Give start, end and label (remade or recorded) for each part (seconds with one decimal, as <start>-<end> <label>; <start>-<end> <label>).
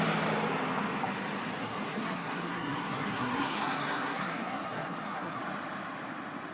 0.0-1.6 recorded; 1.6-5.4 remade; 5.4-6.5 recorded